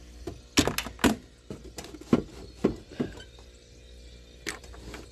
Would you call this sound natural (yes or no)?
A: yes